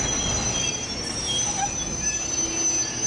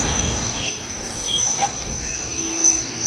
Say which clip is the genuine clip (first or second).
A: first